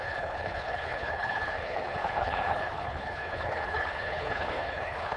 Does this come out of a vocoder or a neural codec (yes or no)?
yes